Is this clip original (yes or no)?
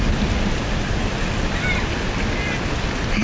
yes